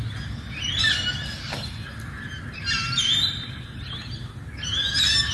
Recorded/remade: recorded